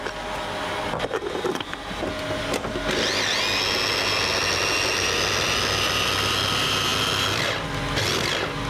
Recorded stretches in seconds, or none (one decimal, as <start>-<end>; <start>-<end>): 0.0-8.7